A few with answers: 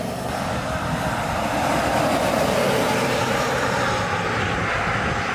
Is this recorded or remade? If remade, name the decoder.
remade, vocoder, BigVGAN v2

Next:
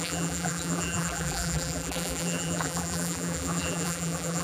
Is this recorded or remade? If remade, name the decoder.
remade, vocoder, BigVGAN v2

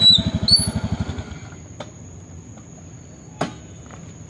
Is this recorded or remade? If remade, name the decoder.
recorded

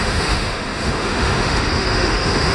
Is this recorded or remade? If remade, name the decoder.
remade, autoencoder, DAC-VAE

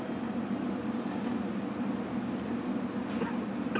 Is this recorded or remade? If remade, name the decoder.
recorded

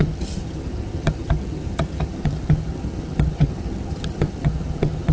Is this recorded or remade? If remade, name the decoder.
remade, vocoder, HiFi-GAN